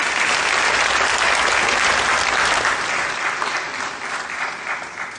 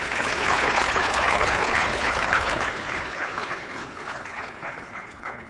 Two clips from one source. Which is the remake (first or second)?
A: second